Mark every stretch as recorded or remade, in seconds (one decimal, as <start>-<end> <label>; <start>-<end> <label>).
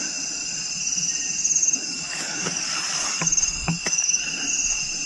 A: 0.0-1.6 recorded; 1.6-4.2 remade; 4.2-5.1 recorded